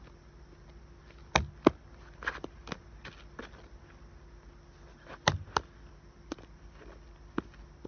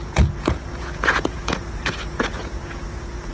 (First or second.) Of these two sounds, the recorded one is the first